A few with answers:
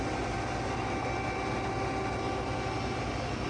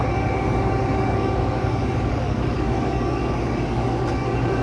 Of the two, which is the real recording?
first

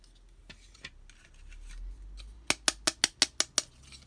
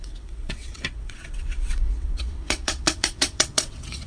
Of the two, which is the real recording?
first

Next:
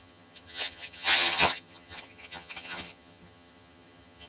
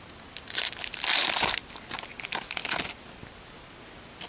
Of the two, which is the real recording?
second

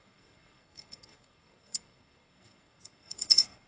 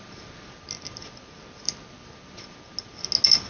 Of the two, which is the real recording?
second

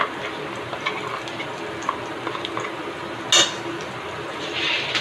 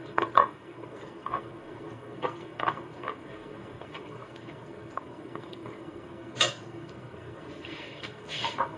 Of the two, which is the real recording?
first